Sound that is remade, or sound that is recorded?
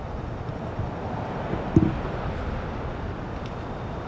recorded